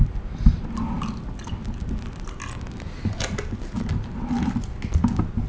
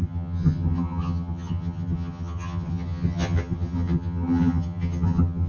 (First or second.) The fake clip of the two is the second